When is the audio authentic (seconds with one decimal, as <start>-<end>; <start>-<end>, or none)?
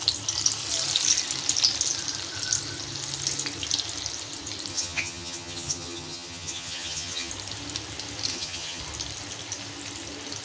0.0-4.7; 7.3-8.3; 8.8-10.4